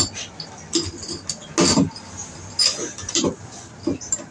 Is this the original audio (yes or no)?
yes